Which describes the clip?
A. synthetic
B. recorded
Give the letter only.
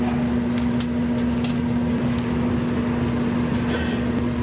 B